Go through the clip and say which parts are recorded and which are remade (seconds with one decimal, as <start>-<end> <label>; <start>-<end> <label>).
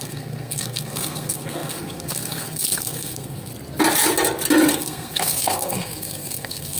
0.0-3.5 remade; 3.5-4.7 recorded; 4.7-6.8 remade